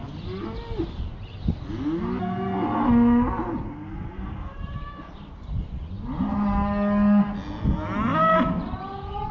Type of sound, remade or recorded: recorded